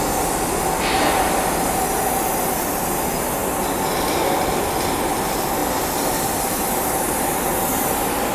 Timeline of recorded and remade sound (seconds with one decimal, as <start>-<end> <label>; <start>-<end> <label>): 0.0-8.3 recorded